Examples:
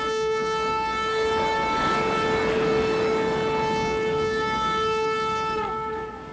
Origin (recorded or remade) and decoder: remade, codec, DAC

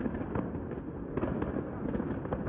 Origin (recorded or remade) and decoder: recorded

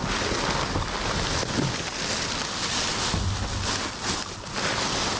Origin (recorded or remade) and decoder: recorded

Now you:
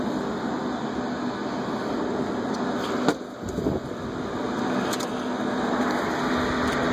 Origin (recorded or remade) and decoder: recorded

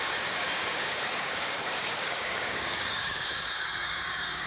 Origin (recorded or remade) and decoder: remade, codec, DAC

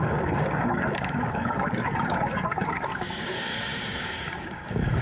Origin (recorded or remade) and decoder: remade, codec, DAC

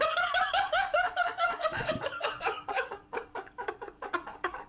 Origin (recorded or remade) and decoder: remade, codec, DAC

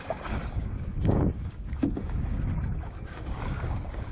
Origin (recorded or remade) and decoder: remade, codec, DAC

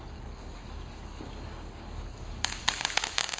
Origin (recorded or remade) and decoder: remade, codec, DAC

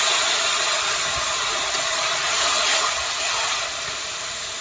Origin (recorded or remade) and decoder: recorded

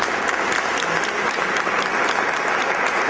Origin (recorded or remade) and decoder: recorded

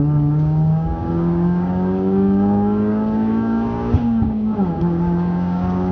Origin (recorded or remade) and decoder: remade, codec, DAC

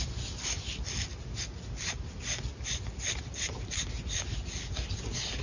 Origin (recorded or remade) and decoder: recorded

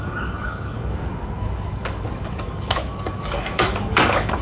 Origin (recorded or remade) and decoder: remade, codec, DAC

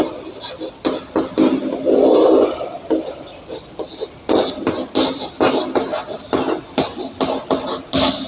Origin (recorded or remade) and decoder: recorded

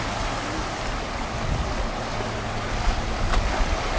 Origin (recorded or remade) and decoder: recorded